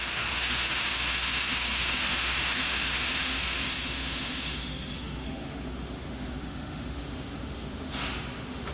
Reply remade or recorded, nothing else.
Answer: remade